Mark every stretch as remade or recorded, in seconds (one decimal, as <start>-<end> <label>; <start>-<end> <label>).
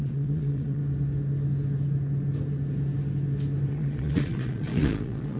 0.0-0.8 remade; 0.8-3.7 recorded; 3.7-5.4 remade